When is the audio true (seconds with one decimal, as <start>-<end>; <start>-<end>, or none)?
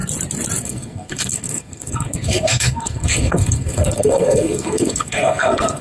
0.0-0.6